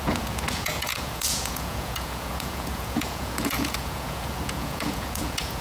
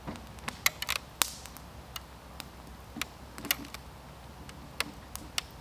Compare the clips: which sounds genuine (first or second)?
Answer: second